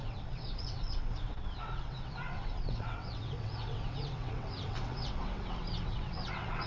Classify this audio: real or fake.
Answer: fake